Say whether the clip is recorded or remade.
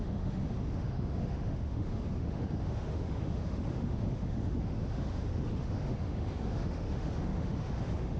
remade